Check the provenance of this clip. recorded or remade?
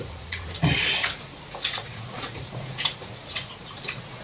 remade